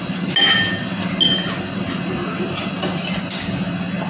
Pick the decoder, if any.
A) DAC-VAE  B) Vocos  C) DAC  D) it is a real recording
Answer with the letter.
D